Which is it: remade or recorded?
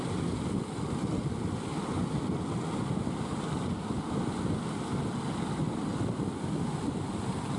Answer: recorded